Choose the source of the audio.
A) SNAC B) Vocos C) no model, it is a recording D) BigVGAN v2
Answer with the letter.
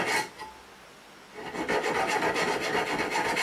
C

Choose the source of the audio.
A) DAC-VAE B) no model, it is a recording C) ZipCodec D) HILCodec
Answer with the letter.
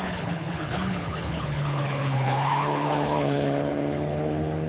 D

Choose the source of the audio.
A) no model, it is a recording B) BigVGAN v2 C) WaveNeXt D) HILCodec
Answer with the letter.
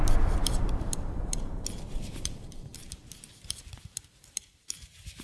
B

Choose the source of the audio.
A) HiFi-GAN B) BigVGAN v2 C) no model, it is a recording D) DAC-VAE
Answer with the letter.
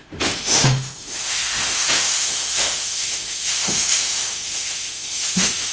D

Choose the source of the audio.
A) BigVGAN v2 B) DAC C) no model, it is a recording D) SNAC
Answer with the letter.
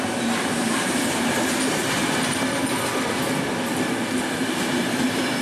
C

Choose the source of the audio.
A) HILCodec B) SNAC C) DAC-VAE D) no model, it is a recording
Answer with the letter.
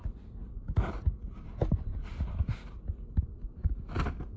D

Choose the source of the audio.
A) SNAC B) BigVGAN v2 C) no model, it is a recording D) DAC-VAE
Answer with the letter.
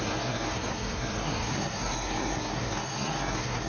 A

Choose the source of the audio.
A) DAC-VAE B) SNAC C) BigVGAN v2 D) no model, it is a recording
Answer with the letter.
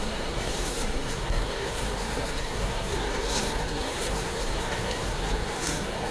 B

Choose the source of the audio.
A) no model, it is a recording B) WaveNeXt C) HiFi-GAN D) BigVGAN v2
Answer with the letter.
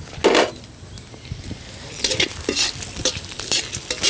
A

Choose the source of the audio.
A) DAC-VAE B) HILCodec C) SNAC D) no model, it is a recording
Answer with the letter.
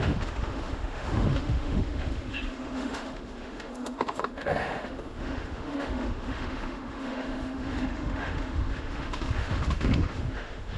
A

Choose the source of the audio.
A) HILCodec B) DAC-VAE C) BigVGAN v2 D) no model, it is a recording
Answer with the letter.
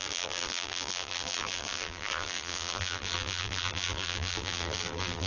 C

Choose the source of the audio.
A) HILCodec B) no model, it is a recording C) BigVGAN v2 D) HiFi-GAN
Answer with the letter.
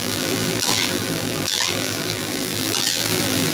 C